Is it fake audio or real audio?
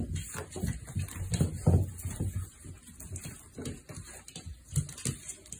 real